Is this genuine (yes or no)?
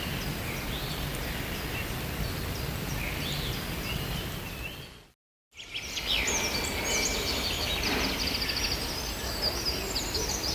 yes